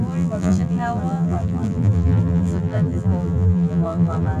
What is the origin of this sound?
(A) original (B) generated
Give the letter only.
B